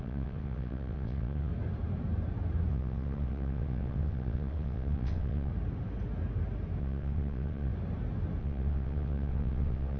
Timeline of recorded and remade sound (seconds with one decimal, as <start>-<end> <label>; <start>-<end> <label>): 0.0-1.5 remade; 1.5-2.7 recorded; 2.7-5.5 remade; 5.5-6.8 recorded; 6.8-7.7 remade; 7.7-8.4 recorded; 8.4-10.0 remade